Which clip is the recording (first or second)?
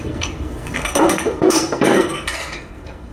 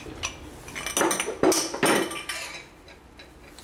second